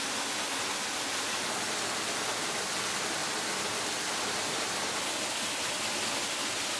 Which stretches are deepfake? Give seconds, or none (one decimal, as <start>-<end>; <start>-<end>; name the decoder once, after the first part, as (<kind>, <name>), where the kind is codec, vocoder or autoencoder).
none